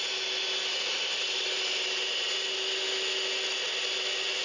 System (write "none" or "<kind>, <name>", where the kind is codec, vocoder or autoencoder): none